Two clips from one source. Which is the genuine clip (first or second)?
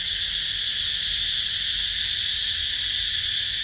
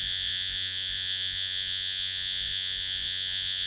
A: first